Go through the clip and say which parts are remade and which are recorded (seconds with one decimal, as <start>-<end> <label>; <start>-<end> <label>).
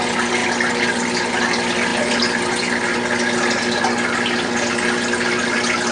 0.0-5.9 recorded